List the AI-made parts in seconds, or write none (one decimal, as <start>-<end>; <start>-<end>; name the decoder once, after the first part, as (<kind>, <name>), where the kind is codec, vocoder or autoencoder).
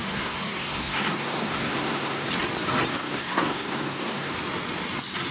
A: 0.0-2.3 (codec, SNAC); 2.9-4.3